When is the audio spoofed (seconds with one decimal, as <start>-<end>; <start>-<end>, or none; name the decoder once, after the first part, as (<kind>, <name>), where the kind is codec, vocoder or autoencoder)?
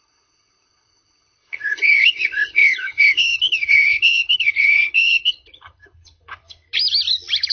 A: 0.0-6.7 (codec, HILCodec)